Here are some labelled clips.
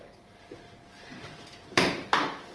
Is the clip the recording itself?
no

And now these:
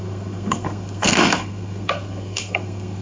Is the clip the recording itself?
no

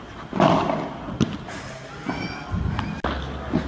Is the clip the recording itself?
yes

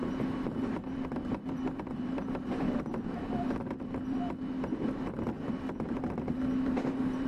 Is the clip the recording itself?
no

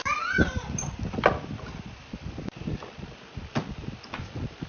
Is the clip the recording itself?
yes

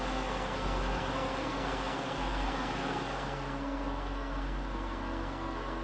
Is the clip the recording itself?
no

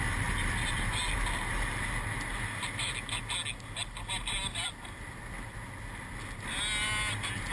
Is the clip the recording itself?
yes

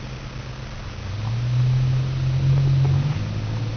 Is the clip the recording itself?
yes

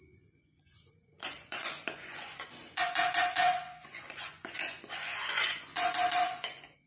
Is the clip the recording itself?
no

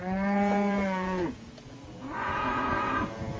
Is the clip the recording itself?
no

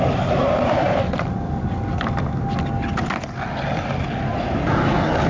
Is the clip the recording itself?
yes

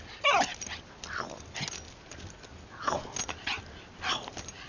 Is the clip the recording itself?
yes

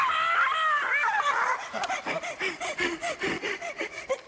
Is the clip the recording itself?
yes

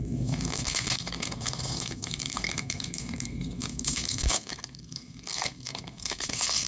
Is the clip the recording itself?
no